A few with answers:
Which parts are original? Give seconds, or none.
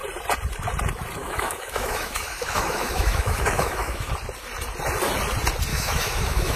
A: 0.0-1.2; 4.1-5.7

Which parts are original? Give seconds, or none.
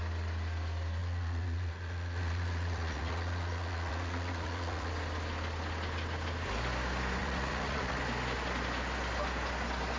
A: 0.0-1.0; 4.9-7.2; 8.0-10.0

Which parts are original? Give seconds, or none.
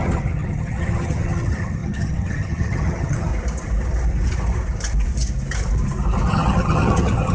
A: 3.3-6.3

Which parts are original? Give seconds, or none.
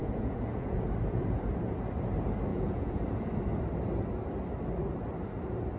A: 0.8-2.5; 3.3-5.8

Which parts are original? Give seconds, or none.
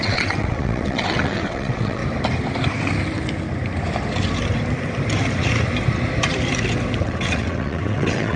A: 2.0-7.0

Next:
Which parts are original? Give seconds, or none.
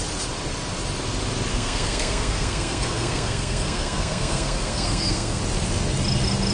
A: 0.0-1.5; 5.4-6.5